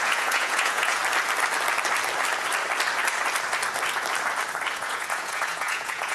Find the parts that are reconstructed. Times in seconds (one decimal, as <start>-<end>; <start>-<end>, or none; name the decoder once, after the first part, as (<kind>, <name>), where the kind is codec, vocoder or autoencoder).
0.0-1.0 (vocoder, Vocos); 4.7-6.1